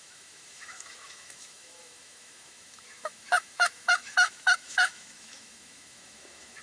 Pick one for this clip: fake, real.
fake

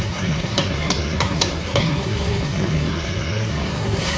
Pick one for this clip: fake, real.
fake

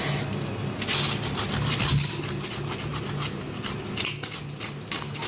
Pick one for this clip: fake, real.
real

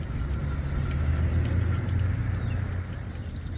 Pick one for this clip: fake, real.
real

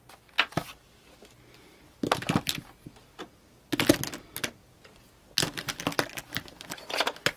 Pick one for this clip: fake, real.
real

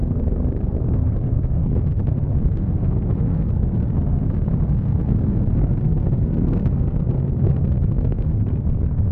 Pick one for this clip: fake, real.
fake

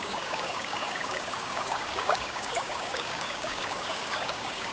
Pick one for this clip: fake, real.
fake